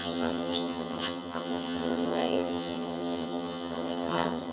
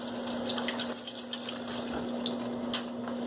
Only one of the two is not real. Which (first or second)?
first